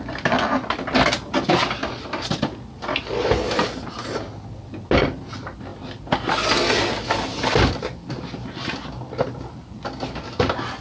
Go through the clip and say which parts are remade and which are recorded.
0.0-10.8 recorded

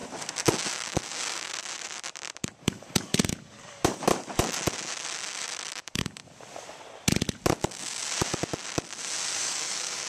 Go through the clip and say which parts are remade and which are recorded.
0.0-0.7 recorded; 0.7-1.5 remade; 1.5-2.6 recorded; 2.6-4.1 remade; 4.1-5.7 recorded; 5.7-6.2 remade; 6.2-9.4 recorded; 9.4-10.1 remade

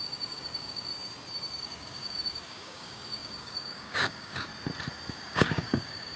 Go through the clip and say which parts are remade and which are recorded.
0.0-0.9 remade; 0.9-1.6 recorded; 1.6-4.5 remade; 4.5-5.1 recorded; 5.1-6.2 remade

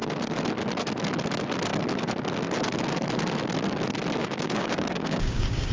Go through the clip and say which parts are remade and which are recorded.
0.0-4.2 recorded; 4.2-5.7 remade

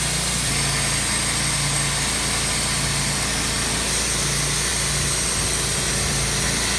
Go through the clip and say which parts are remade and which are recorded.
0.0-6.8 recorded